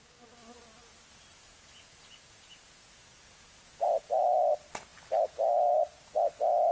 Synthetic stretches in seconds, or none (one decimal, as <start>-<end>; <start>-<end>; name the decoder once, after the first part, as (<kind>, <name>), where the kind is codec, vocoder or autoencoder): 1.1-4.1 (vocoder, Vocos)